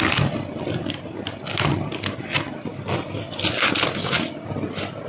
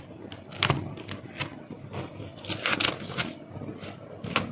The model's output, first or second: first